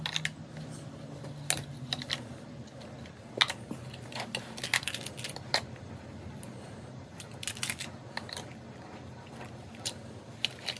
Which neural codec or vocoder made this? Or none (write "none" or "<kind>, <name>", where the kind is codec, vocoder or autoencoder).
none